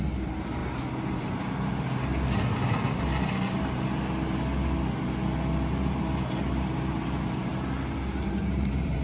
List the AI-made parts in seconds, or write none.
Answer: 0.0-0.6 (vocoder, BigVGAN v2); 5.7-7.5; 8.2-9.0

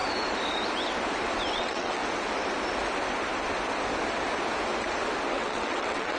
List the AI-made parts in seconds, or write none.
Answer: 1.5-2.0 (vocoder, WaveNeXt); 5.3-6.2

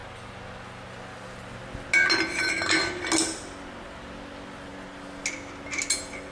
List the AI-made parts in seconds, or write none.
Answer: none

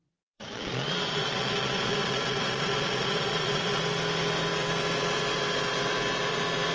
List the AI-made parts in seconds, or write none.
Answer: 0.0-3.8 (vocoder, Vocos)

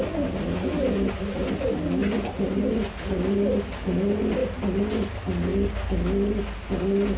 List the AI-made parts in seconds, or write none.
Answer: none